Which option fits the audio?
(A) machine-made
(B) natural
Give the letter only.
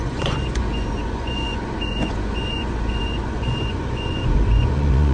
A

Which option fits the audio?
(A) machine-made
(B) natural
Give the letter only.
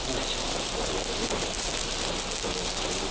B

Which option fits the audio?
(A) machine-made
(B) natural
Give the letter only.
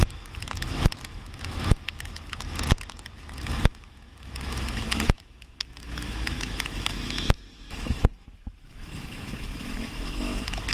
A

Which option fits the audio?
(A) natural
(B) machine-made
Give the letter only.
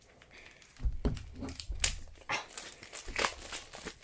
A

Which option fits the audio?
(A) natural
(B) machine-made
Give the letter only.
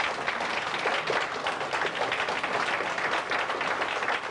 A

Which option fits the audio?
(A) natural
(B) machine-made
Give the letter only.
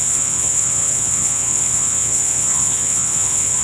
B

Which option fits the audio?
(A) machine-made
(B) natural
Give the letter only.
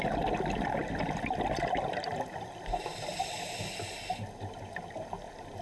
B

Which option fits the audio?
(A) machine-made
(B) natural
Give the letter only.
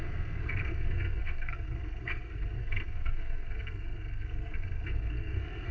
A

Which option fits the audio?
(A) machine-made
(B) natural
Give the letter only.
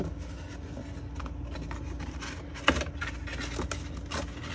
B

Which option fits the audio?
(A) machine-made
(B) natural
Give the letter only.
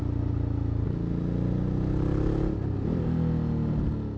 B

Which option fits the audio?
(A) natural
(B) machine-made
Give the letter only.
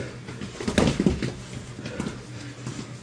A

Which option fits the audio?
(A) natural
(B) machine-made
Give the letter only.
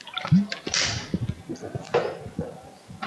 A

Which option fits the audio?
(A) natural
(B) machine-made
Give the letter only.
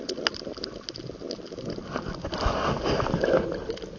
A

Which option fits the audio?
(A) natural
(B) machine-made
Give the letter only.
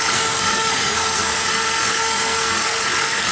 B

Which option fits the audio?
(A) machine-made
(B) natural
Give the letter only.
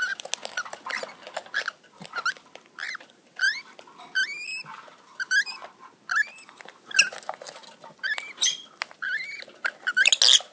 B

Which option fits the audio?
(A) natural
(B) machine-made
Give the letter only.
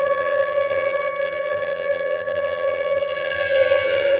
B